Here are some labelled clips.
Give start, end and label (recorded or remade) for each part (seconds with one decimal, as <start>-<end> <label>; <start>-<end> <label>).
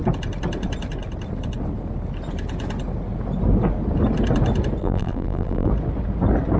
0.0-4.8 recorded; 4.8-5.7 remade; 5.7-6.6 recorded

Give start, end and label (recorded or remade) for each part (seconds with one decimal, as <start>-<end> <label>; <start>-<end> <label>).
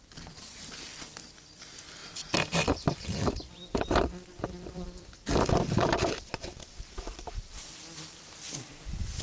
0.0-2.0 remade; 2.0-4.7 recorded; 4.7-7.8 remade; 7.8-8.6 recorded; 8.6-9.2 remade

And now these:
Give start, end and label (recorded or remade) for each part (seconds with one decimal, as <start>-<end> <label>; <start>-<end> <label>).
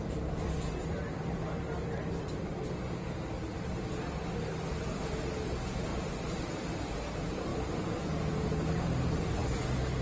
0.0-2.0 recorded; 2.0-2.5 remade; 2.5-5.9 recorded; 5.9-6.8 remade; 6.8-10.0 recorded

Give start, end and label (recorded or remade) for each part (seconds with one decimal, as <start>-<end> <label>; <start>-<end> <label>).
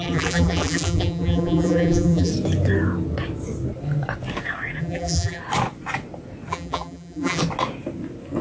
0.0-2.3 remade; 2.3-4.8 recorded; 4.8-5.4 remade; 5.4-6.5 recorded; 6.5-7.4 remade; 7.4-8.4 recorded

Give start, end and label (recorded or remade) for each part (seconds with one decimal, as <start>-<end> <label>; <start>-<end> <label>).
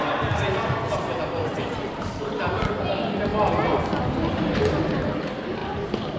0.0-1.5 recorded; 1.5-2.4 remade; 2.4-5.6 recorded; 5.6-6.2 remade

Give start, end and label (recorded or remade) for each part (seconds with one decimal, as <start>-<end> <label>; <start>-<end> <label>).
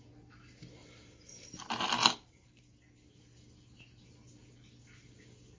0.0-1.0 recorded; 1.0-1.6 remade; 1.6-2.0 recorded; 2.0-2.8 remade; 2.8-5.6 recorded